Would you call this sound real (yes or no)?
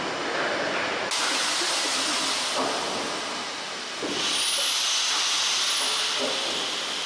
yes